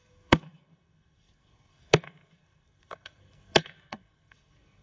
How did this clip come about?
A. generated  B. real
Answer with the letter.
A